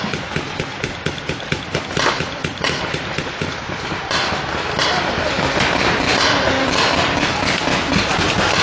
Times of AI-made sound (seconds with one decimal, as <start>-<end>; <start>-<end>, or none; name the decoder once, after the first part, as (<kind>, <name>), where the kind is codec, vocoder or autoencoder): 0.7-5.4 (vocoder, BigVGAN v2)